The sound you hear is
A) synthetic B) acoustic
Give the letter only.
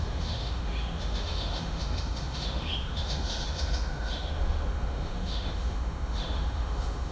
A